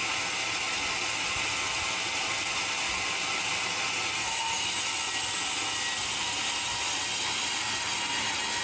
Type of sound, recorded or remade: recorded